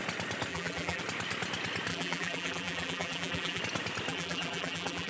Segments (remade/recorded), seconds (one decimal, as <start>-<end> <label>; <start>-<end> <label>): 0.0-0.5 recorded; 0.5-1.0 remade; 1.0-1.9 recorded; 1.9-3.6 remade; 3.6-4.1 recorded; 4.1-5.1 remade